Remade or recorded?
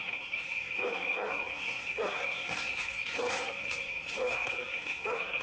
remade